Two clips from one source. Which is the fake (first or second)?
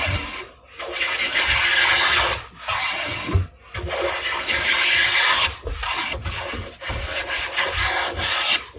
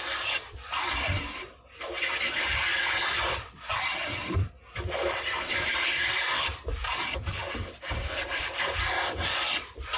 second